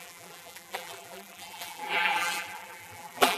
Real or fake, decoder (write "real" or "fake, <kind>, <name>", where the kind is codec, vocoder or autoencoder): fake, vocoder, BigVGAN v2